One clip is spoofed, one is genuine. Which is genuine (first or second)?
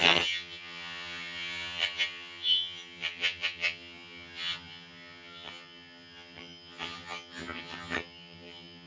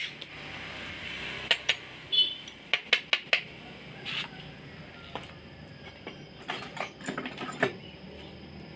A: second